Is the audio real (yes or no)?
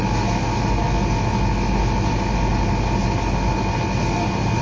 yes